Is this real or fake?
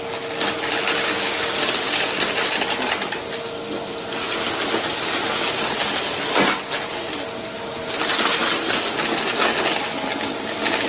real